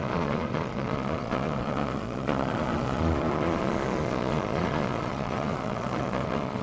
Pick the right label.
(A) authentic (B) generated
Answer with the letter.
B